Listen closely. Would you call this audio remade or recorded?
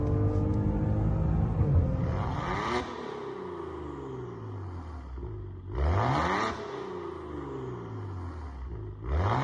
recorded